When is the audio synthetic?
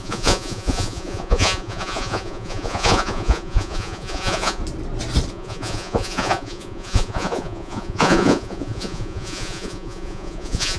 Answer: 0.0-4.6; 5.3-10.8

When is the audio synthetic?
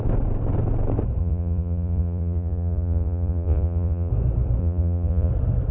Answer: 1.2-4.1; 4.6-5.3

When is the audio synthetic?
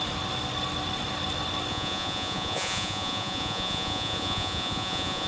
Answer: 1.7-5.3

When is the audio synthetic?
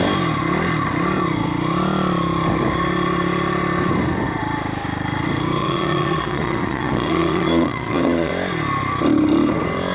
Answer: 5.6-8.3